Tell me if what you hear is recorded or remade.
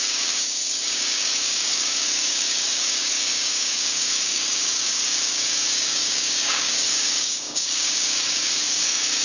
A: remade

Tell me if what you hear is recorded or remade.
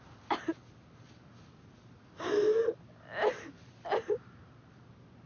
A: recorded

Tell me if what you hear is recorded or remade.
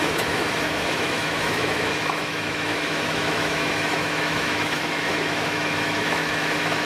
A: remade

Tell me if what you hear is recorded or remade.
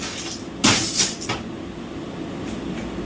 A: recorded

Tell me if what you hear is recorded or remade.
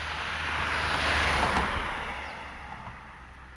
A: recorded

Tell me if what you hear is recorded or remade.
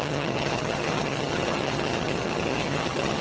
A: remade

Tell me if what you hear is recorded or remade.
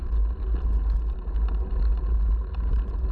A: recorded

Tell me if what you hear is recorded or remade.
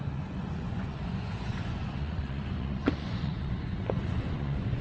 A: remade